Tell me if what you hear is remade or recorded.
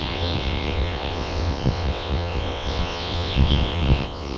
remade